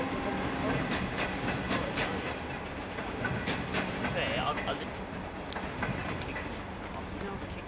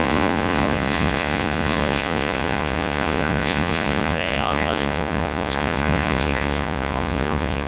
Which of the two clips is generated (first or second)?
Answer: second